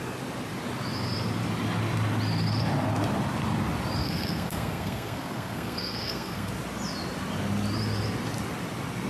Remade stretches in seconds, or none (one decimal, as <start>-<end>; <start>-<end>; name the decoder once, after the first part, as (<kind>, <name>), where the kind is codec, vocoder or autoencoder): 4.0-6.5 (codec, SNAC)